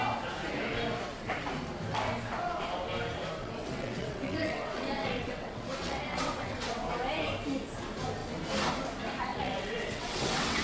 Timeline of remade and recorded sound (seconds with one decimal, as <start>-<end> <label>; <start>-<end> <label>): 0.0-3.4 recorded; 3.4-6.8 remade; 6.8-9.3 recorded; 9.3-10.6 remade